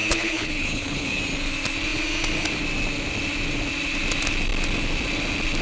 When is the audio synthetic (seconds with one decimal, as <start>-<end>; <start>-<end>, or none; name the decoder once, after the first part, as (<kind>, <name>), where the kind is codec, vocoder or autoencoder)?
0.0-1.2 (codec, HILCodec)